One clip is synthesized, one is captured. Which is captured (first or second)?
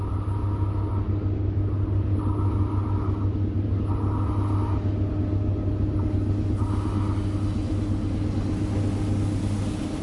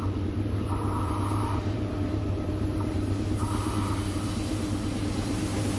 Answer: first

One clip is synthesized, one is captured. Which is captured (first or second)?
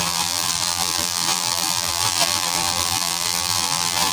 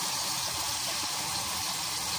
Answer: second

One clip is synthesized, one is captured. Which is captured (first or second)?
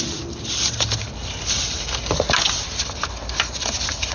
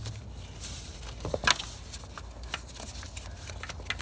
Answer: second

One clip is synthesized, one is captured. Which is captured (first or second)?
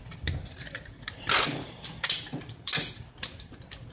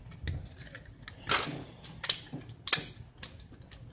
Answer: second